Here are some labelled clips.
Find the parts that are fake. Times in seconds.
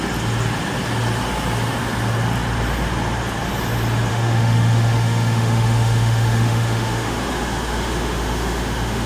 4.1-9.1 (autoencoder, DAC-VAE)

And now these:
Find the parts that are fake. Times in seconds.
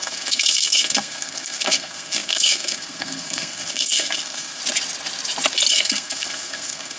0.0-4.6 (codec, SNAC); 5.7-7.0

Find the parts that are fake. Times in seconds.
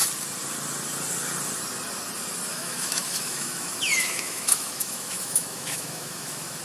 2.5-6.6 (autoencoder, DAC-VAE)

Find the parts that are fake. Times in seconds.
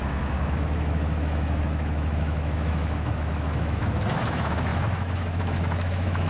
0.0-6.3 (autoencoder, DAC-VAE)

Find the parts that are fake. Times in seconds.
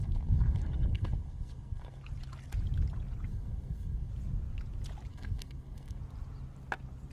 0.0-2.0 (codec, SNAC); 3.3-4.1; 5.1-6.0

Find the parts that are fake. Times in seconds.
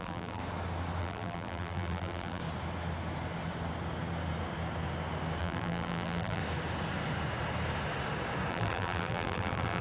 0.0-0.4 (vocoder, BigVGAN v2); 1.0-2.4; 5.4-6.4; 8.5-9.8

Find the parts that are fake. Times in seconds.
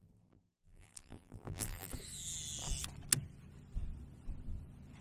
0.0-1.9 (vocoder, BigVGAN v2)